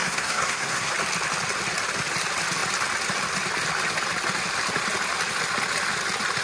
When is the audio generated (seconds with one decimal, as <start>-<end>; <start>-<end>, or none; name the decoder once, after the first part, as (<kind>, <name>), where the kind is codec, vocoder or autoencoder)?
0.0-0.9 (codec, SNAC)